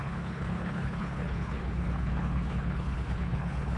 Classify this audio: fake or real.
fake